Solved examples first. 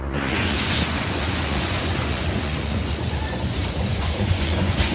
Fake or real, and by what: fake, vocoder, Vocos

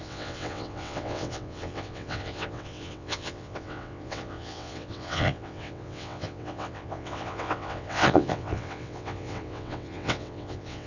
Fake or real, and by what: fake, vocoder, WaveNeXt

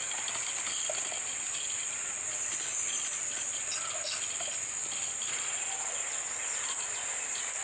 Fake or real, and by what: real